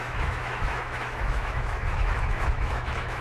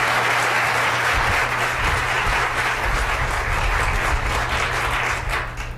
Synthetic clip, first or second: first